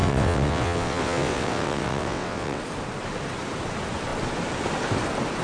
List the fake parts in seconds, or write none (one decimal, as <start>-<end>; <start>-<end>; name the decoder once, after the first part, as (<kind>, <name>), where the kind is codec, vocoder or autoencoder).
0.0-2.6 (vocoder, WaveNeXt)